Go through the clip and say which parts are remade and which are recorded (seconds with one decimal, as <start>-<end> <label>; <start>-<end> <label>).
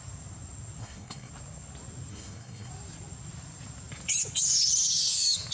0.0-0.8 recorded; 0.8-1.3 remade; 1.3-2.1 recorded; 2.1-2.7 remade; 2.7-5.5 recorded